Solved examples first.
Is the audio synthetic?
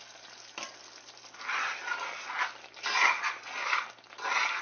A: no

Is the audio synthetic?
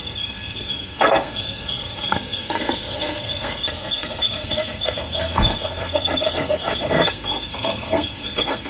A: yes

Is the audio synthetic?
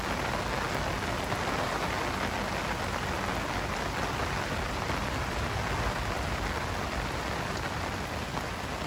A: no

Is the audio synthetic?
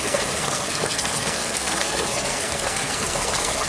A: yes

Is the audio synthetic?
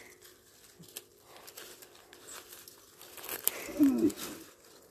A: no